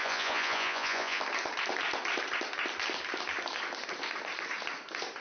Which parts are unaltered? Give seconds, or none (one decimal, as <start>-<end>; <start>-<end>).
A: 1.2-5.2